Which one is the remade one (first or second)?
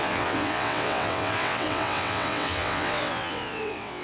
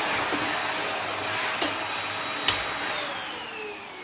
first